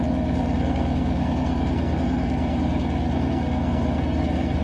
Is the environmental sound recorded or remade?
remade